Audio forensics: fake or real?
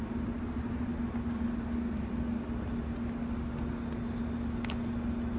real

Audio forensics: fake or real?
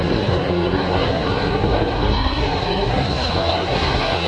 fake